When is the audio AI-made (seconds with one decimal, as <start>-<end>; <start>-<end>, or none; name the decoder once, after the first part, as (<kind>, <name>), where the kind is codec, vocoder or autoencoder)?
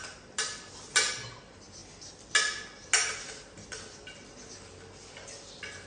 none